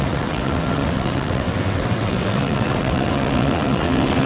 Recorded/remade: remade